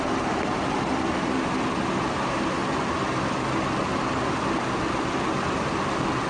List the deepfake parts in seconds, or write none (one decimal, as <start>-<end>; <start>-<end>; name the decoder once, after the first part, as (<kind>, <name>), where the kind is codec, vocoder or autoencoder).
0.0-2.6 (vocoder, BigVGAN v2)